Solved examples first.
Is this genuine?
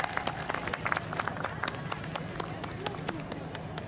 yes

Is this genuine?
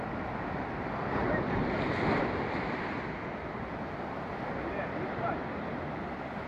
yes